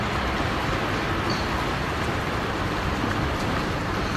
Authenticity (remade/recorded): recorded